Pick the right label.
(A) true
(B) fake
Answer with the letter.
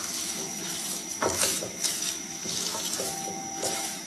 B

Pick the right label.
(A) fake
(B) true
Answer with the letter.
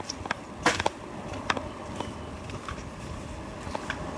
B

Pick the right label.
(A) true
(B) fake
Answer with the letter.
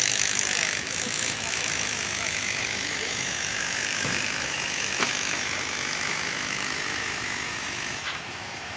B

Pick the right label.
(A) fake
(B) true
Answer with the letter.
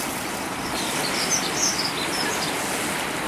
B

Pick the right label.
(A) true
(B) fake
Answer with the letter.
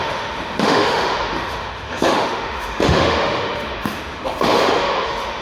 B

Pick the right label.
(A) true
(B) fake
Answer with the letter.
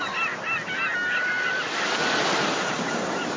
A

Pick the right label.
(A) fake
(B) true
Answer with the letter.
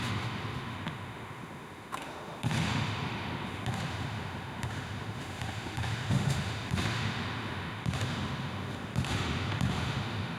A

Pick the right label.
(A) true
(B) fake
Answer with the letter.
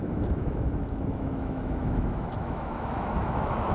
B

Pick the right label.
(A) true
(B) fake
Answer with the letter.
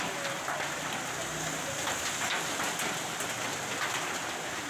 A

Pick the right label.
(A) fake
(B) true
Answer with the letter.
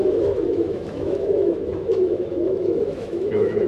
A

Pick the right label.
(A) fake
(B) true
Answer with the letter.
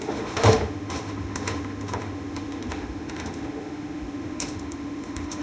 A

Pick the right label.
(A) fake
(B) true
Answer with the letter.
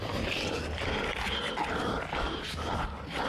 B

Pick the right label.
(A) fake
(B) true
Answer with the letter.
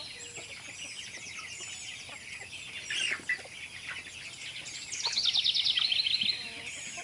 B